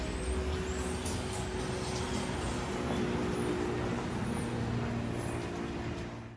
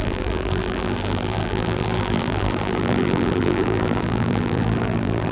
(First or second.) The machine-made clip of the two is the second